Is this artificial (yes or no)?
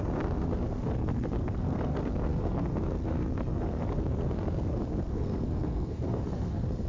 yes